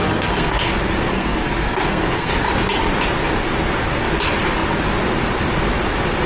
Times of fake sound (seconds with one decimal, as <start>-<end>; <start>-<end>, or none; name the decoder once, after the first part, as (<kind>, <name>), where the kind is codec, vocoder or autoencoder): 0.0-0.7 (codec, SNAC); 1.1-2.3